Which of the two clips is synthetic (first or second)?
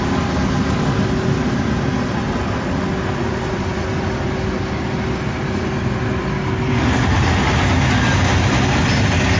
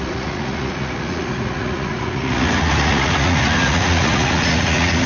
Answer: second